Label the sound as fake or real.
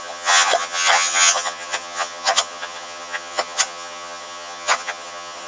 fake